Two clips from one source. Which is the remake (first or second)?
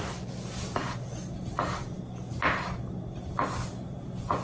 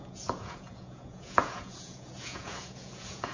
second